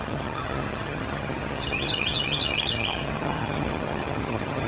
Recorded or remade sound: remade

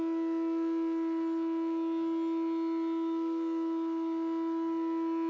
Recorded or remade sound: recorded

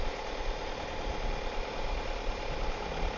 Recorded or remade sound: recorded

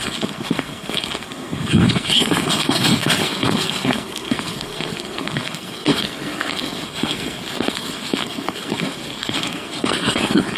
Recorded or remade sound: remade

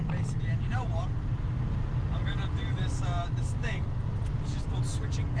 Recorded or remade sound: recorded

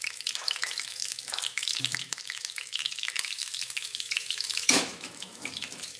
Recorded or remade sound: remade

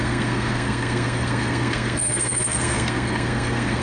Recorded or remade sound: remade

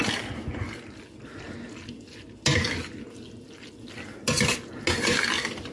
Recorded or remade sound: recorded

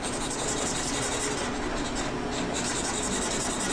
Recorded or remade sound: recorded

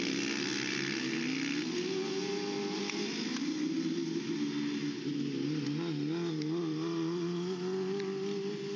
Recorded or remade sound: recorded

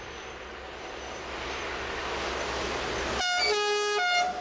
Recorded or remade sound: recorded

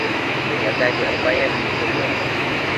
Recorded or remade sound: remade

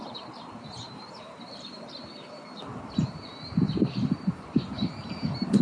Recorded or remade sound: remade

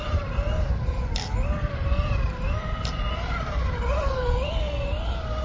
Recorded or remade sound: recorded